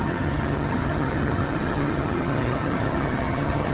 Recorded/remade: remade